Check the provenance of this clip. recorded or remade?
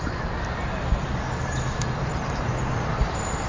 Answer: recorded